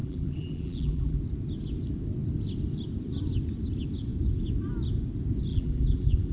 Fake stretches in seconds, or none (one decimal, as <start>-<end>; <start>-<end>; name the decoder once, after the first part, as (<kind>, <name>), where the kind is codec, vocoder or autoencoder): 0.0-1.2 (vocoder, BigVGAN v2); 5.5-6.3